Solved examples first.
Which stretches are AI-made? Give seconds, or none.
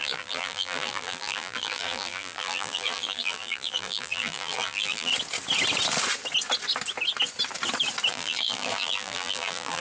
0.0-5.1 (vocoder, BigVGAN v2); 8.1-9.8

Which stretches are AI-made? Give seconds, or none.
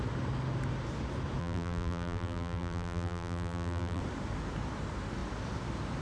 1.4-4.0 (vocoder, BigVGAN v2)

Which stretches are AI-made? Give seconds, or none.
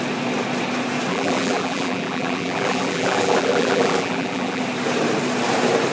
1.1-4.6 (vocoder, BigVGAN v2)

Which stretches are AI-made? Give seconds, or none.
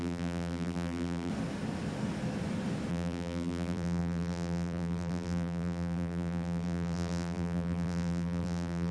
0.0-1.3 (vocoder, BigVGAN v2); 2.9-8.9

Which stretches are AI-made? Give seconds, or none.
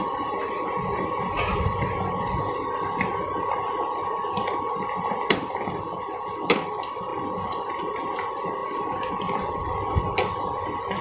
0.0-0.4 (vocoder, BigVGAN v2); 5.3-11.0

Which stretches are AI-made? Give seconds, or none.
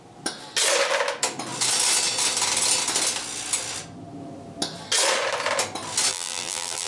6.1-6.9 (vocoder, BigVGAN v2)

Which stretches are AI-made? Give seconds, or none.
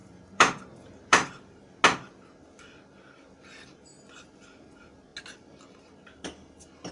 0.0-1.6 (vocoder, BigVGAN v2)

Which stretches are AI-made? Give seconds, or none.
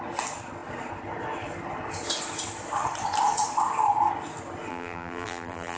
4.7-5.8 (vocoder, BigVGAN v2)